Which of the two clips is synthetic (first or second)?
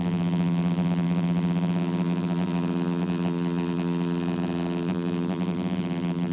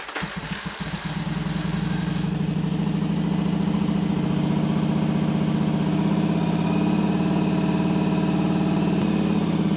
first